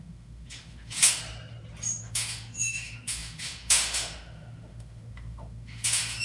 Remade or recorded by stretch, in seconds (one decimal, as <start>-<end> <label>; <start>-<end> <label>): 0.0-1.2 remade; 1.2-2.0 recorded; 2.0-6.2 remade